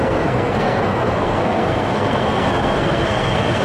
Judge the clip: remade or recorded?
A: remade